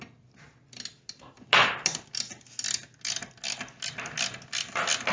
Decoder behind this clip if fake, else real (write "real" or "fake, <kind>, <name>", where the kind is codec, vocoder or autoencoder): real